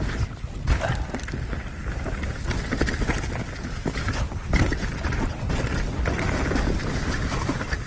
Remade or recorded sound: recorded